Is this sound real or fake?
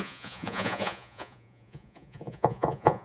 fake